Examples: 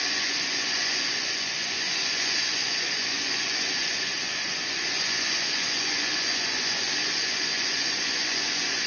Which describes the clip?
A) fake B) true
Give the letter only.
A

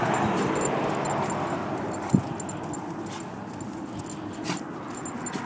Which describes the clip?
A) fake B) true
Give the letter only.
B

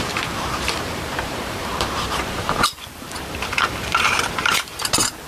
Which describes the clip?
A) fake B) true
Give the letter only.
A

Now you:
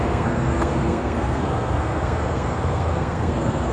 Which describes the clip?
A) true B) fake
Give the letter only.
B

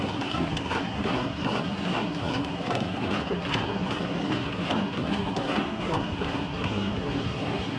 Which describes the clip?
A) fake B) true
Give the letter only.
A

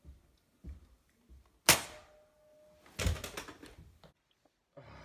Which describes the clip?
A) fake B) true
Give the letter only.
B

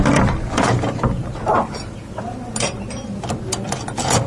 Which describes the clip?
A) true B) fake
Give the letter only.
A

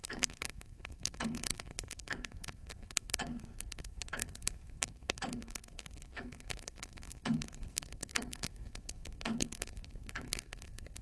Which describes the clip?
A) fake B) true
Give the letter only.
A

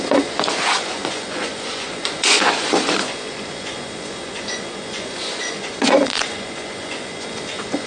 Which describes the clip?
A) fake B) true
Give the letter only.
A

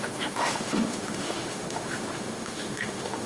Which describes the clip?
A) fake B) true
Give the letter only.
A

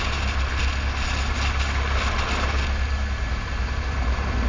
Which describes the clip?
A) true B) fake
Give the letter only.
A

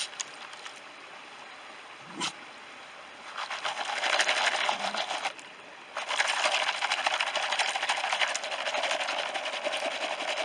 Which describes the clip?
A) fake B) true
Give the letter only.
B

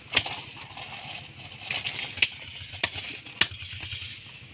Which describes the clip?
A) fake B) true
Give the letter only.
B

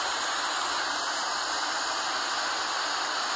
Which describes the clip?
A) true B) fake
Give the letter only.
A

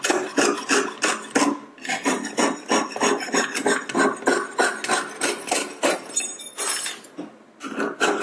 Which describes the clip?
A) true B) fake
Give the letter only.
A